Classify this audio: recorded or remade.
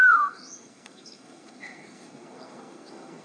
remade